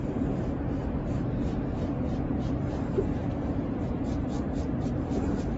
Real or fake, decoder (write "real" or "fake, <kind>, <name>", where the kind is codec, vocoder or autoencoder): fake, vocoder, BigVGAN v2